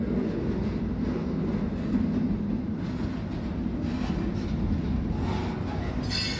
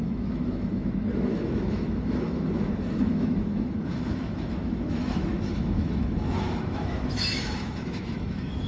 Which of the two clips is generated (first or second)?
second